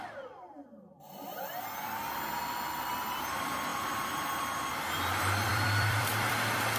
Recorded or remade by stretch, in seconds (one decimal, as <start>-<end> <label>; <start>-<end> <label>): 0.0-1.3 remade; 1.3-2.4 recorded; 2.4-6.8 remade